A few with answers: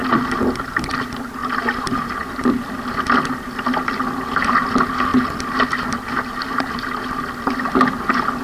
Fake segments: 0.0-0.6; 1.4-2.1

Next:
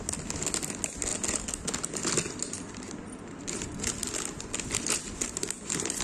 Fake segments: none

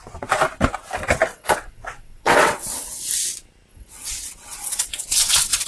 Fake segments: 1.3-3.0; 3.7-5.7

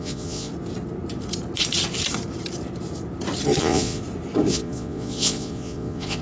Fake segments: 0.0-0.5; 3.6-4.0; 4.5-6.2

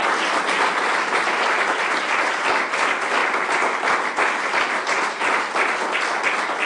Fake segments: none

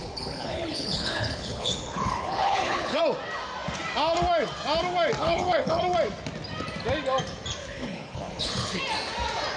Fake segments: 0.0-3.0; 5.2-5.8; 7.6-8.8

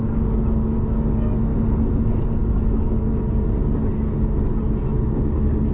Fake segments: none

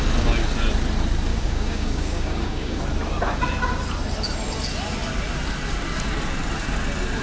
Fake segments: 1.3-2.8